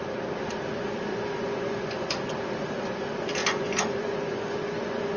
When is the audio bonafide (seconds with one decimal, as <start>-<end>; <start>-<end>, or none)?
0.0-1.1; 2.1-3.4